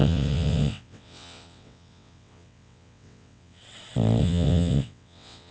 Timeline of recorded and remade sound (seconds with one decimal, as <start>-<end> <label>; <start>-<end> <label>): 0.0-3.6 remade; 3.6-4.2 recorded; 4.2-5.5 remade